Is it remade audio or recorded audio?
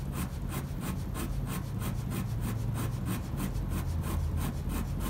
recorded